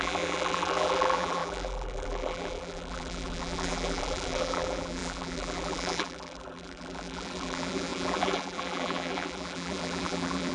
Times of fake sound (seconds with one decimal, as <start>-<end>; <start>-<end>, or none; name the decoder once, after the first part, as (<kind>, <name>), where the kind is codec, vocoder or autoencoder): 0.0-10.5 (vocoder, BigVGAN v2)